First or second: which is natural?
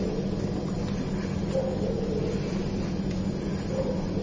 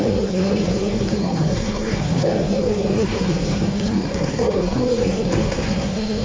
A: first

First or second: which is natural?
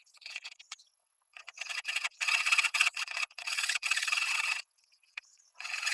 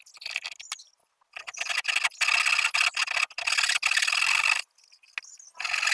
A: second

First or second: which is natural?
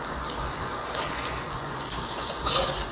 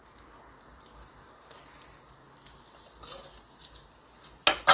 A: second